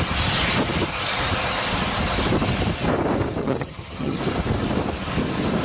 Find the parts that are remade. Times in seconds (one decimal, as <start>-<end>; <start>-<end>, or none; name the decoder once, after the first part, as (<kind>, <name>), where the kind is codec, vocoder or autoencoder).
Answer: 3.4-4.2 (vocoder, HiFi-GAN)